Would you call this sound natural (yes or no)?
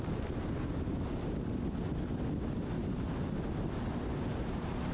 yes